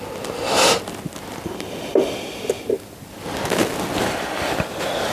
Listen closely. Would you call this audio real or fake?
real